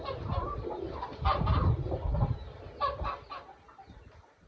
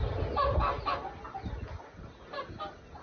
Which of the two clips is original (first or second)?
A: second